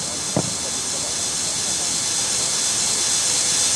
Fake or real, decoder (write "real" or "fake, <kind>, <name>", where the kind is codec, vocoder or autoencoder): real